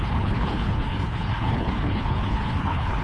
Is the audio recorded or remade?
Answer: remade